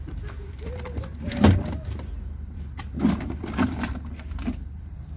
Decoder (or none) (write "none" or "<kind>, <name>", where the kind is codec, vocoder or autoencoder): vocoder, BigVGAN v2